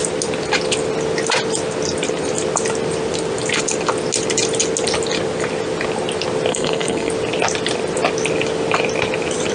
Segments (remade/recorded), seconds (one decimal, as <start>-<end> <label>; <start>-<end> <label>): 0.0-6.5 recorded; 6.5-7.1 remade; 7.1-9.5 recorded